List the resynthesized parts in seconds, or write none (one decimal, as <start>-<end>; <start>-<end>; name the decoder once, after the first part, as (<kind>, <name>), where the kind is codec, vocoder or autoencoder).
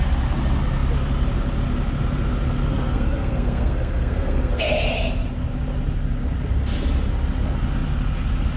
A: 2.7-4.7 (codec, SNAC)